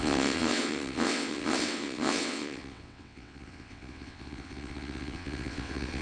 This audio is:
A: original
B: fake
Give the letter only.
B